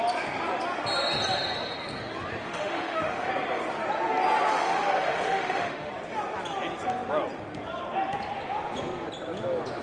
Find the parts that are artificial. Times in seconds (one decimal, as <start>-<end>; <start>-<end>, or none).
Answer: 2.4-3.3; 4.5-5.9